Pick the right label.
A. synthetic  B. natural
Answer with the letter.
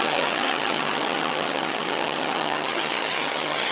A